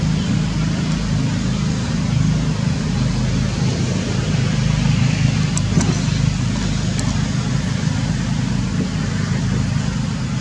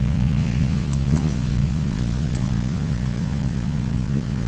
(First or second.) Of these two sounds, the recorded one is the first